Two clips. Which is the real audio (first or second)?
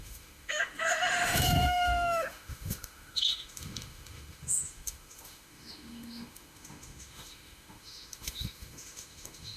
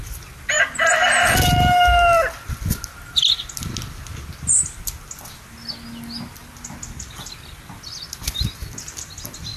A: second